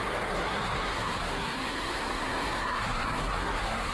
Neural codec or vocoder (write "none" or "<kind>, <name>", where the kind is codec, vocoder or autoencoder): codec, SNAC